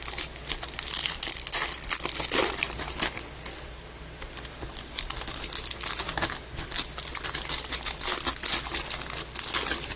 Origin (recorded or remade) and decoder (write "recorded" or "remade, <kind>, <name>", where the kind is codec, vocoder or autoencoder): recorded